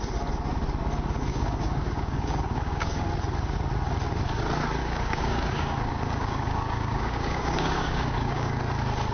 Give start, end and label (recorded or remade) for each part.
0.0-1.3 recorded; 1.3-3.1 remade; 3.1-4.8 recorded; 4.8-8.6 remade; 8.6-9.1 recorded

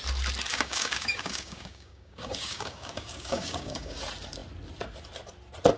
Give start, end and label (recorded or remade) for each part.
0.0-0.5 recorded; 0.5-4.0 remade; 4.0-5.8 recorded

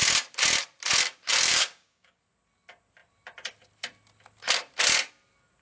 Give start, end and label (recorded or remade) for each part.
0.0-1.5 recorded; 1.5-2.2 remade; 2.2-5.6 recorded

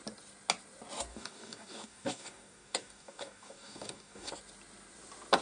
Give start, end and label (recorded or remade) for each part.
0.0-1.1 recorded; 1.1-4.3 remade; 4.3-5.4 recorded

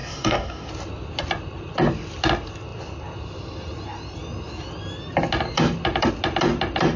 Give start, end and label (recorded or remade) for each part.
0.0-0.7 remade; 0.7-7.0 recorded

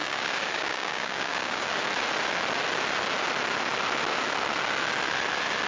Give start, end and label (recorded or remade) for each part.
0.0-1.7 remade; 1.7-5.7 recorded

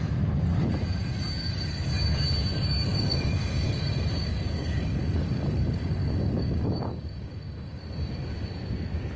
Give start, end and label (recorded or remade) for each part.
0.0-2.9 recorded; 2.9-3.8 remade; 3.8-4.2 recorded; 4.2-7.8 remade; 7.8-9.2 recorded